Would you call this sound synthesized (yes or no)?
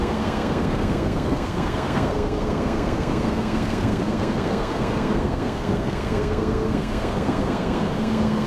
yes